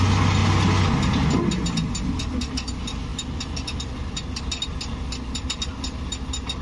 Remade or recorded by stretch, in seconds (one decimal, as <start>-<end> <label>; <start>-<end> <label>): 0.0-6.6 recorded